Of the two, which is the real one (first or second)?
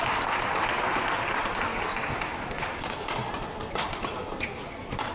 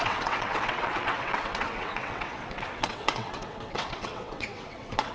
first